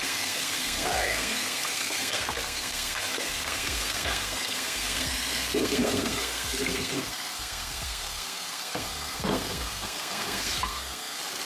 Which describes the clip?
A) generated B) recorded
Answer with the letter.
A